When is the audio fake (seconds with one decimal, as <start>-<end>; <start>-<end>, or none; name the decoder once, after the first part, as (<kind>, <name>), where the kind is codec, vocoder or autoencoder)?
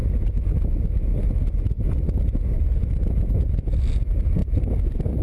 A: 4.4-5.2 (vocoder, BigVGAN v2)